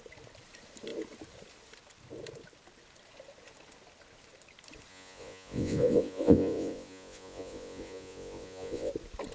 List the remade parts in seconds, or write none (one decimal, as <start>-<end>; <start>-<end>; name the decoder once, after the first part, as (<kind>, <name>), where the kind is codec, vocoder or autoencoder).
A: 4.9-8.9 (vocoder, Vocos)